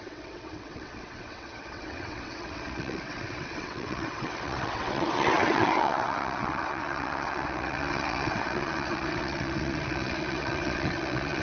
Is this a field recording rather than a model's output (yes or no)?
no